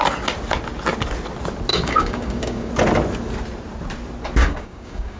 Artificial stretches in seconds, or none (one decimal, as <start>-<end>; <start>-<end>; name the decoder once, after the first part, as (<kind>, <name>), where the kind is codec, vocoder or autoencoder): 1.7-2.7 (codec, DAC); 4.4-5.2